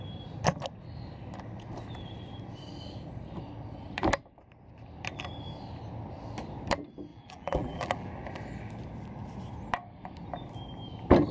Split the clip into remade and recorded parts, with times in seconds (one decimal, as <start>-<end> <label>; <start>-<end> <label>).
0.0-7.1 recorded; 7.1-8.1 remade; 8.1-11.3 recorded